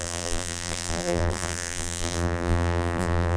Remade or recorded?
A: remade